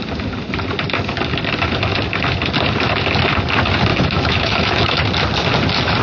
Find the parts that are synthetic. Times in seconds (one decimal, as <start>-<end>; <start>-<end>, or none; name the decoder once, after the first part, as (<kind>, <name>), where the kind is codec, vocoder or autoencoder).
3.9-5.0 (autoencoder, DAC-VAE)